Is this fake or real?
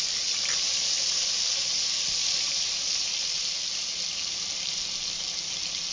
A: real